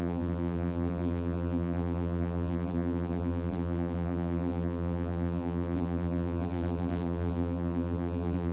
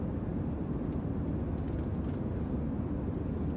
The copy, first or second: first